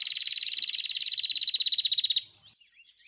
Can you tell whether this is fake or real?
real